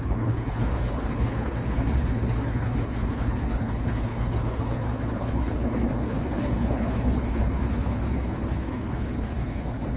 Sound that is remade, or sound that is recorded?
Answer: remade